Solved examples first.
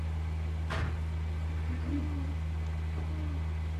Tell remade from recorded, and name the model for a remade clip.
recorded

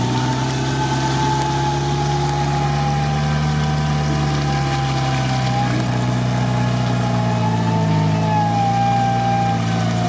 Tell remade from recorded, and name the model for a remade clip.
recorded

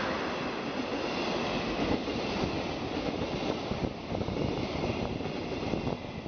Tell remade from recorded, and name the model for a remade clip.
recorded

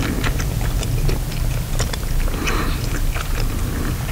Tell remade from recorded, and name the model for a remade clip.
remade, vocoder, BigVGAN v2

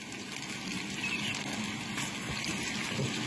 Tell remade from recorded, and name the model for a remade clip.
recorded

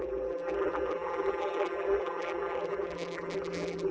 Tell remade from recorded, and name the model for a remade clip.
remade, vocoder, BigVGAN v2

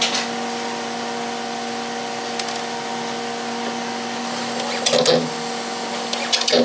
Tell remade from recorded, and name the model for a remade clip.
recorded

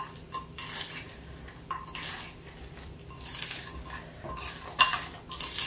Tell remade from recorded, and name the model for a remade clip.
recorded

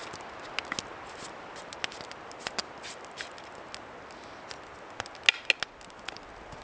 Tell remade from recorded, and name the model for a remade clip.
recorded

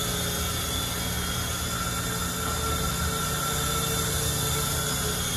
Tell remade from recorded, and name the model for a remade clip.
recorded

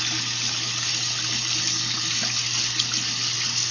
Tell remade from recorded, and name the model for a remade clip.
recorded